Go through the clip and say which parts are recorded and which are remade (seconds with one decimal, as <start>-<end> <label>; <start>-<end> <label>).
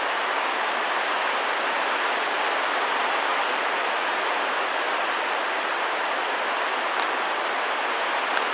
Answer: 0.0-8.5 recorded